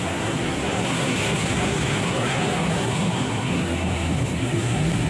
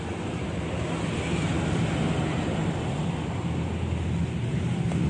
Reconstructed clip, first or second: first